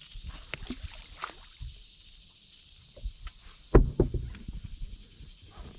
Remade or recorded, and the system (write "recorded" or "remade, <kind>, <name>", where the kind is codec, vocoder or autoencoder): recorded